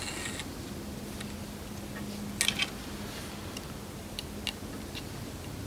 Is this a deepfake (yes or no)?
no